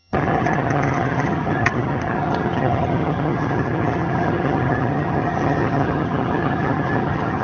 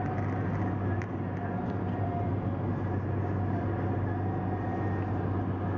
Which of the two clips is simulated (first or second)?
first